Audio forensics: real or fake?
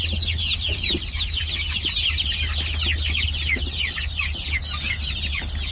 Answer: real